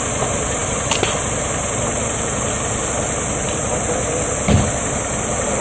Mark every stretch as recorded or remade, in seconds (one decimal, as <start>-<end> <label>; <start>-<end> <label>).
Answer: 0.0-5.6 recorded